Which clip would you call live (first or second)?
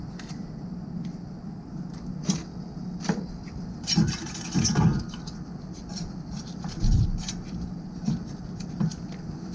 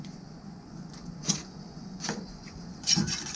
first